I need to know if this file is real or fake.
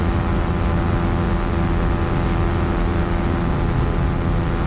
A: real